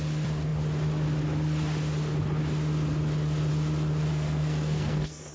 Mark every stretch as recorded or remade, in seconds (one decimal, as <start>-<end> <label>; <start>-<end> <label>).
0.0-4.1 recorded; 4.1-5.3 remade